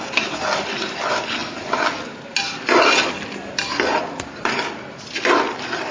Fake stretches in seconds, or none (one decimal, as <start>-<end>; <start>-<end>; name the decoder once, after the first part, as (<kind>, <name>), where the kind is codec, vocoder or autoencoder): none